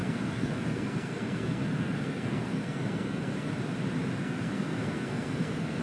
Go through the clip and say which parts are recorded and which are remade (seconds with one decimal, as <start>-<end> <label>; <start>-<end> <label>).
0.0-3.5 remade; 3.5-4.2 recorded; 4.2-5.8 remade